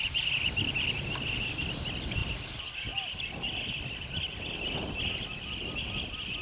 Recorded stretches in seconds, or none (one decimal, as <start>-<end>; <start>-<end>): 0.0-6.4